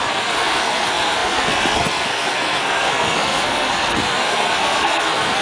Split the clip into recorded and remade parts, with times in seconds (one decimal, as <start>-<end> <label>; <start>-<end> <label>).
0.0-5.4 remade

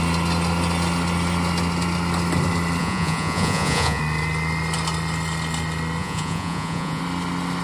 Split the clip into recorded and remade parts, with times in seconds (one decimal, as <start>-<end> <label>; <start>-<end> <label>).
0.0-2.8 recorded; 2.8-4.0 remade; 4.0-6.0 recorded; 6.0-7.0 remade; 7.0-7.6 recorded

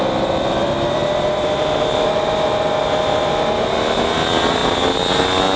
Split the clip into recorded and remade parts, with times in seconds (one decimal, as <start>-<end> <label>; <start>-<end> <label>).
0.0-5.6 recorded

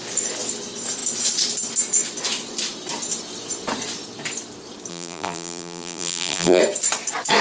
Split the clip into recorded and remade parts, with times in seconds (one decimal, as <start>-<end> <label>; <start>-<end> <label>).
0.0-4.9 recorded; 4.9-6.6 remade; 6.6-7.4 recorded